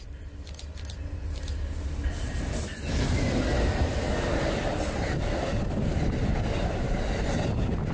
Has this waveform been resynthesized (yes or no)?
no